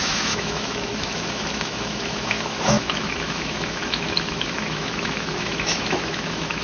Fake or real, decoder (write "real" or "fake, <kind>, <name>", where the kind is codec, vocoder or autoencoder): fake, autoencoder, DAC-VAE